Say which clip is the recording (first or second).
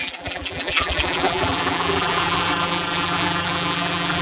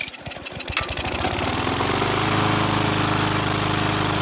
second